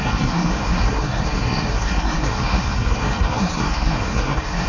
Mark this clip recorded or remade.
remade